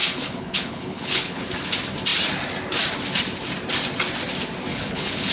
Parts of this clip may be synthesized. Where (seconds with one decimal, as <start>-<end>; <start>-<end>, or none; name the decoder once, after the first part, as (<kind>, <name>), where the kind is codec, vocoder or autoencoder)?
0.0-1.5 (codec, HILCodec); 4.7-5.3